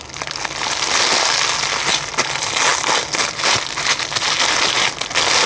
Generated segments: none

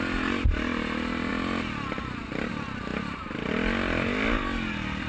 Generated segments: none